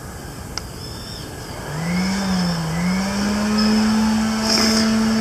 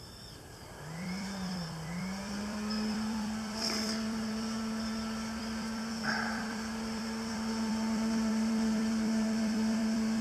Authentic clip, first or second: first